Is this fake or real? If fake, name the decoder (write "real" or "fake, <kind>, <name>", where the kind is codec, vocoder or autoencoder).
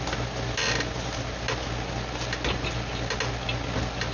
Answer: real